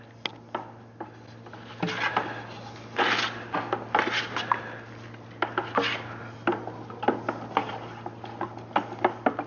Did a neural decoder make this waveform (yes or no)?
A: no